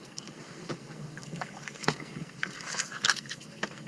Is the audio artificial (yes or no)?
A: yes